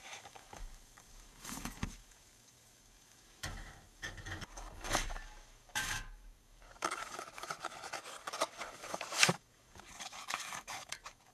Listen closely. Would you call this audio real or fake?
fake